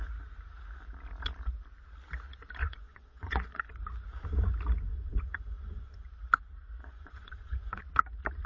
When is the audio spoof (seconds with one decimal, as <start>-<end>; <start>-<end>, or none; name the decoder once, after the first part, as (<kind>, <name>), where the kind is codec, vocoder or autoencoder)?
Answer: 2.6-3.6 (vocoder, Vocos); 4.9-6.0; 6.8-7.8